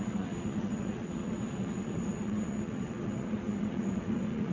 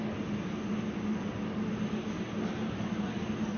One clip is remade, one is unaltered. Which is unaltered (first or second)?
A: second